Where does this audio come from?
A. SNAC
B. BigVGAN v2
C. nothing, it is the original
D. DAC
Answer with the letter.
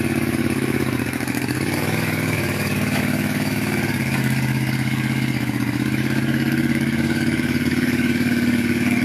D